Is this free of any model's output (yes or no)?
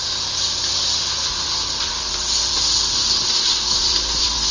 yes